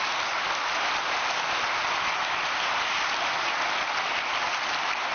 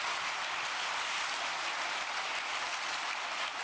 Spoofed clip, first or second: second